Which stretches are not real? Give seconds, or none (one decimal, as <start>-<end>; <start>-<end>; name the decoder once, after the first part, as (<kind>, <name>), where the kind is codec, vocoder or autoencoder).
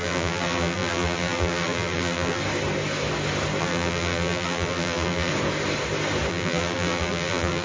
0.0-2.4 (vocoder, BigVGAN v2); 3.6-5.3; 6.3-7.6